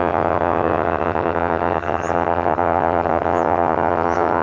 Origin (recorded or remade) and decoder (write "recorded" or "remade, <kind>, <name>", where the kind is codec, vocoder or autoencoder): remade, vocoder, HiFi-GAN